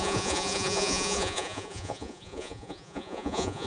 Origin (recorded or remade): remade